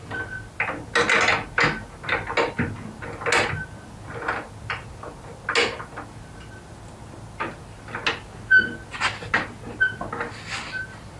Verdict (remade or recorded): recorded